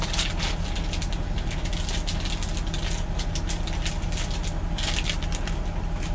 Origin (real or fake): real